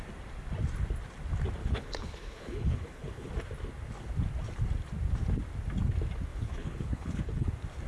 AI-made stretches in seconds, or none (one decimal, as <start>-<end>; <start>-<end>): 1.6-3.3; 6.3-7.5